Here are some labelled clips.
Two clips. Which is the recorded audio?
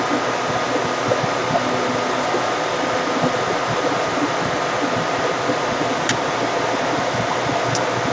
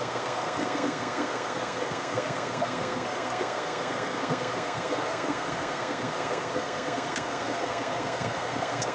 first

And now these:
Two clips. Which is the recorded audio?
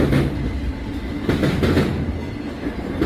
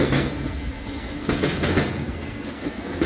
first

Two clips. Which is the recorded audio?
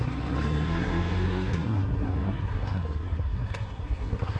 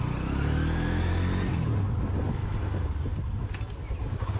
second